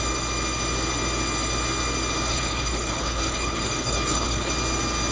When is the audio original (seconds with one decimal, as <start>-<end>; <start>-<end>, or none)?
0.0-2.3; 4.5-5.1